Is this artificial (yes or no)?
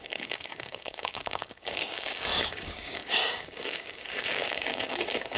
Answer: yes